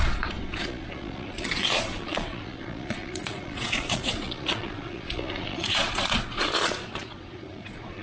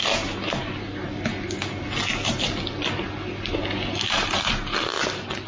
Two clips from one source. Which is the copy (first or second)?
first